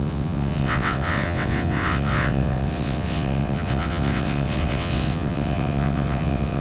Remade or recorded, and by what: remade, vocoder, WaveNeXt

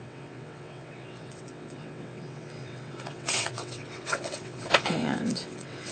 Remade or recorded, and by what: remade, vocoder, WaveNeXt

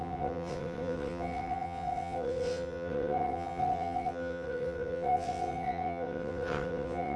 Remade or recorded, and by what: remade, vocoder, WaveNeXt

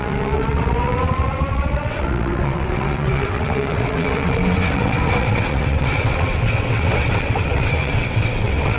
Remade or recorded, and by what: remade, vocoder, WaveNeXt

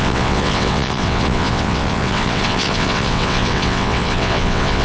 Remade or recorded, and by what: remade, vocoder, WaveNeXt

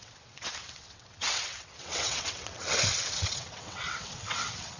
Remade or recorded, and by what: remade, vocoder, WaveNeXt